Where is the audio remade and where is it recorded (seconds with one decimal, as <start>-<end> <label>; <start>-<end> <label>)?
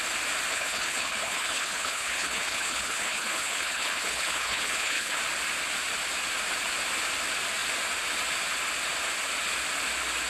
0.0-0.5 recorded; 0.5-5.2 remade; 5.2-10.3 recorded